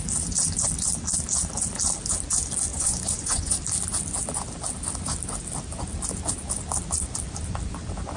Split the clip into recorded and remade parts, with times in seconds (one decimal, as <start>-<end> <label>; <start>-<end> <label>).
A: 0.0-2.7 recorded; 2.7-3.6 remade; 3.6-8.2 recorded